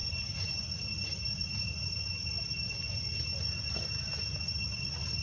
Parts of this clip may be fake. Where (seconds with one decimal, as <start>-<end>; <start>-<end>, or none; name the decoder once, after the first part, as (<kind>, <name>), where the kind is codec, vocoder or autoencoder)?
none

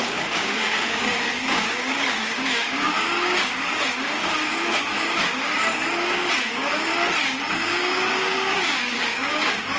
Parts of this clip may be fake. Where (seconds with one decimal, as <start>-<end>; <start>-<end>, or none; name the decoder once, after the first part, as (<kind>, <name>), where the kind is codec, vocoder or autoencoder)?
0.0-6.9 (codec, DAC); 7.5-9.8